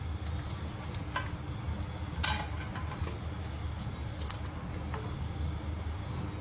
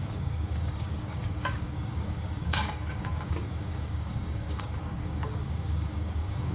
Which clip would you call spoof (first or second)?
second